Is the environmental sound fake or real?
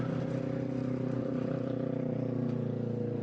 real